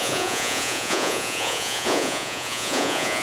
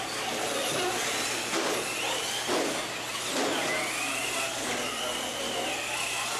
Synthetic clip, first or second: first